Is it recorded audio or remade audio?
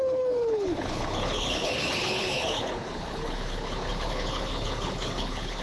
remade